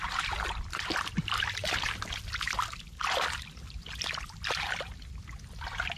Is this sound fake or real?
real